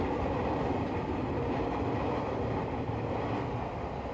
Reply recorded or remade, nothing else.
recorded